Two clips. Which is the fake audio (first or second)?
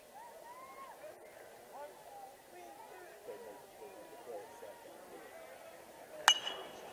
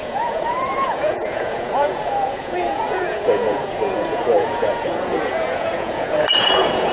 second